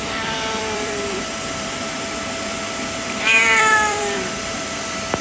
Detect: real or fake fake